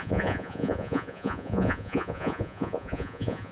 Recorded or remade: remade